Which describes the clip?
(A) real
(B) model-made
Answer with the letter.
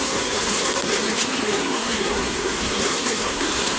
B